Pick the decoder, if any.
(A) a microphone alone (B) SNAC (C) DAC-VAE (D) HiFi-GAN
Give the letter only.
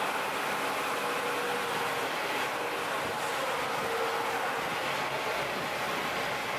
A